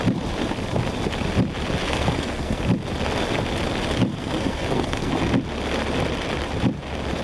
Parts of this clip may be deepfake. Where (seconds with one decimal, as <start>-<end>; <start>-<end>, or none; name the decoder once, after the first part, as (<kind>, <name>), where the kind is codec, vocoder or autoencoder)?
1.8-2.6 (codec, SNAC); 4.1-5.1